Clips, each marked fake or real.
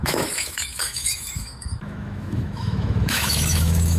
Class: fake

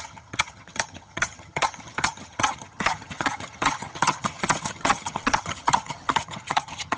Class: fake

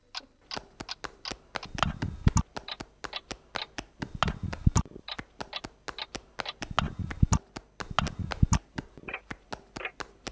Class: real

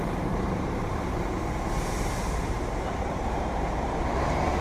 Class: fake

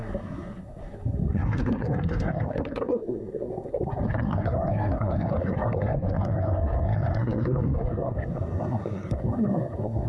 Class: fake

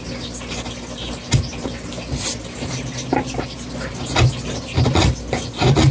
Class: real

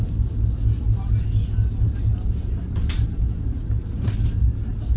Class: real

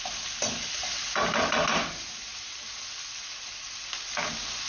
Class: real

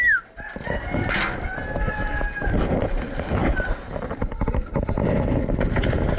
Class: real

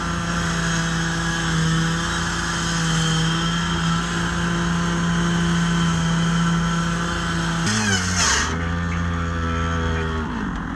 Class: real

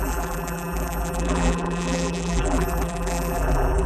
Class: fake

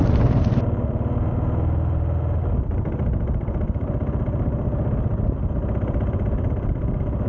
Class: real